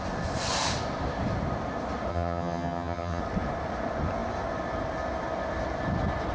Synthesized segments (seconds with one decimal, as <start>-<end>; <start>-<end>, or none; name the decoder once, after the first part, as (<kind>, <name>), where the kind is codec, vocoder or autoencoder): 2.1-3.2 (vocoder, HiFi-GAN)